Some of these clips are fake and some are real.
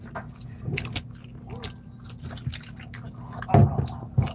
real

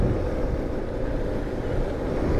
real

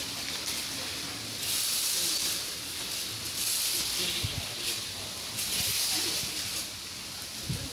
fake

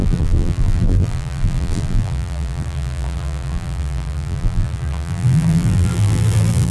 fake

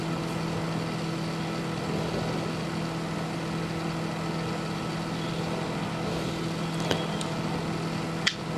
real